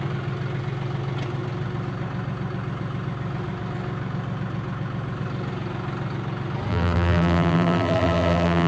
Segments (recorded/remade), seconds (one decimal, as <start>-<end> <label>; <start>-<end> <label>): 0.0-6.7 recorded; 6.7-8.7 remade